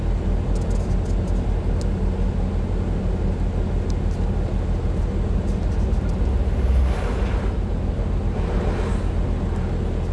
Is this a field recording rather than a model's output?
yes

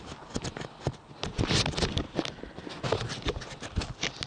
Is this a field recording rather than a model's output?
yes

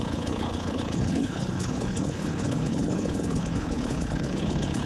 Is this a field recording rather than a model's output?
no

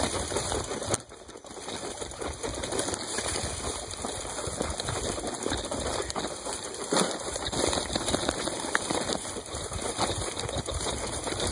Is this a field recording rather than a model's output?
yes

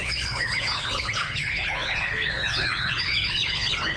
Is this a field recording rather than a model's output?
no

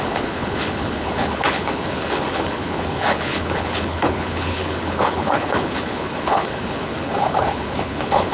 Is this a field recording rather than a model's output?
no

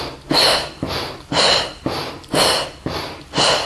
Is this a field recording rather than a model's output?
yes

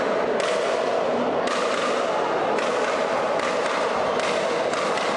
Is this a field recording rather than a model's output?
yes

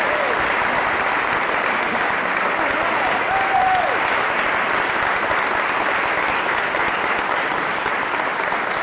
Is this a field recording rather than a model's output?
yes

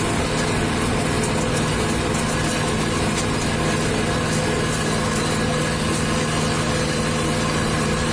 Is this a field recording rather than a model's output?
yes